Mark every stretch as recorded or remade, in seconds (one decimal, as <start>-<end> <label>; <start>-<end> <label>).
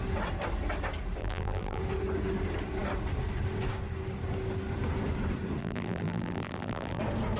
0.0-1.2 recorded; 1.2-1.8 remade; 1.8-5.6 recorded; 5.6-7.0 remade; 7.0-7.4 recorded